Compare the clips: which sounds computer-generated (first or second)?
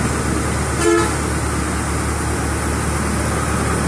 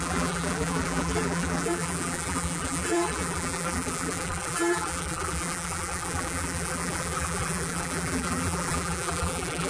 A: second